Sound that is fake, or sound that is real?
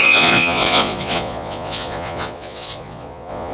fake